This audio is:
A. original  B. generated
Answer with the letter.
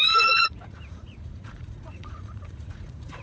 B